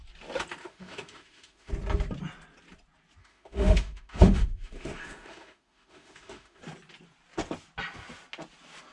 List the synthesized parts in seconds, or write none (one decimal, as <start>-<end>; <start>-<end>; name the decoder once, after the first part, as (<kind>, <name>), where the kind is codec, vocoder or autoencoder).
0.6-1.7 (autoencoder, DAC-VAE); 3.2-6.6